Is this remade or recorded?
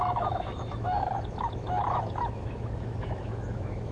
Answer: remade